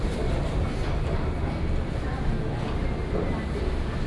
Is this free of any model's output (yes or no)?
yes